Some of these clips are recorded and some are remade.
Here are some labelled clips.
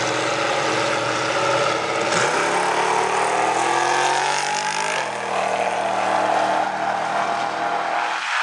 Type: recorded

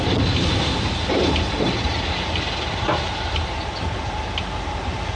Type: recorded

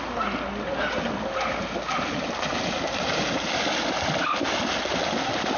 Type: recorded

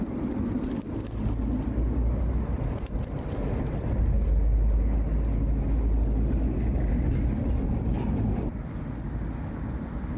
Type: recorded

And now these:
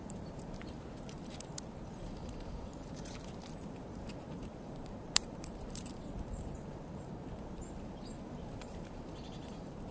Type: remade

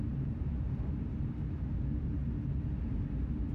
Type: recorded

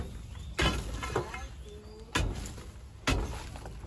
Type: recorded